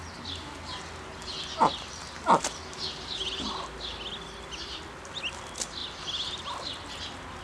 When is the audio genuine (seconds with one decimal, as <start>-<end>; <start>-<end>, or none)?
0.0-7.4